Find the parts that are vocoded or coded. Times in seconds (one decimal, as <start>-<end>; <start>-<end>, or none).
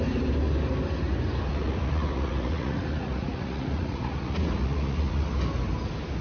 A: 1.5-5.2